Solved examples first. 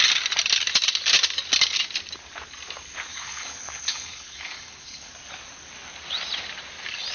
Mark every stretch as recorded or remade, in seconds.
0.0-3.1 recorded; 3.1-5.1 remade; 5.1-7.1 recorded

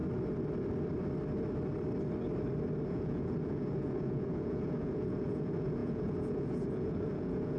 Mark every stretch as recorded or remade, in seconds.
0.0-2.9 recorded; 2.9-7.6 remade

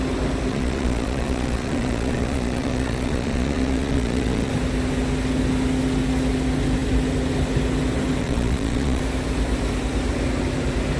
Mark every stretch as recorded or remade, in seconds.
0.0-0.5 recorded; 0.5-4.5 remade; 4.5-8.2 recorded; 8.2-9.0 remade; 9.0-11.0 recorded

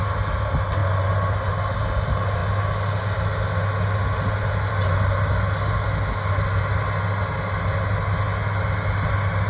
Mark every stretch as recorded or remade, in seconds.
0.0-9.5 recorded

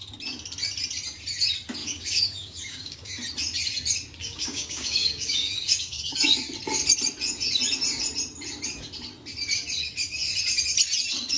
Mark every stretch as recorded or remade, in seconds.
0.0-1.8 recorded; 1.8-3.1 remade; 3.1-4.2 recorded; 4.2-6.3 remade; 6.3-11.4 recorded

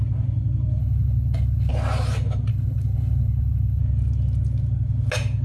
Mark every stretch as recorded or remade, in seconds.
0.0-0.8 recorded; 0.8-1.7 remade; 1.7-2.5 recorded; 2.5-3.8 remade; 3.8-5.4 recorded

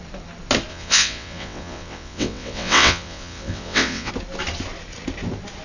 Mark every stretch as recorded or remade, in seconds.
0.0-0.7 recorded; 0.7-4.1 remade; 4.1-5.6 recorded